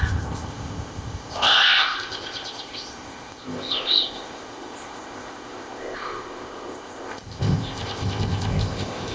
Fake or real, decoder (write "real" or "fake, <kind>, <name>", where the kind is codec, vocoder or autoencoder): fake, codec, ZipCodec